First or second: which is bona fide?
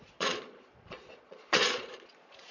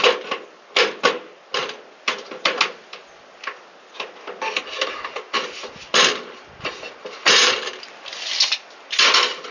second